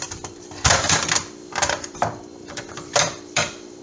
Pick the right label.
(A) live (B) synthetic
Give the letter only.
B